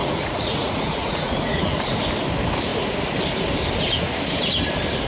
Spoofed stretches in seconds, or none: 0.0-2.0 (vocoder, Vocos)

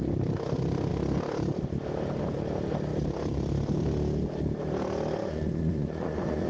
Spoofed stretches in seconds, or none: 5.2-6.5 (vocoder, Vocos)

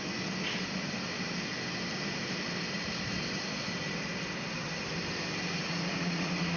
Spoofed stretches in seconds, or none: 5.5-6.6 (vocoder, Vocos)

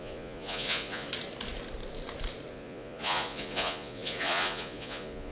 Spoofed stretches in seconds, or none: 0.0-1.1 (vocoder, Vocos); 2.5-5.3

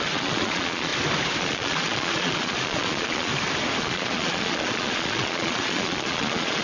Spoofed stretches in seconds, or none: 0.0-0.9 (vocoder, Vocos); 1.4-3.3; 3.8-6.6

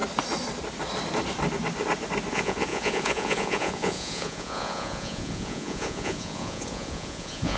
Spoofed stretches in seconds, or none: 2.3-7.6 (vocoder, Vocos)

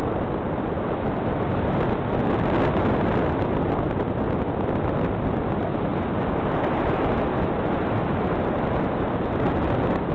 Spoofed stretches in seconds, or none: none